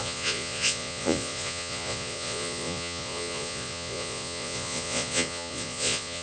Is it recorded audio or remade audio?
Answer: remade